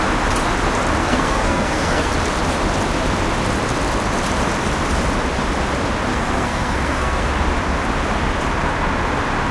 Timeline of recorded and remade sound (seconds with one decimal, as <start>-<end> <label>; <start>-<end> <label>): 0.0-1.0 recorded; 1.0-2.1 remade; 2.1-6.1 recorded; 6.1-7.3 remade; 7.3-9.5 recorded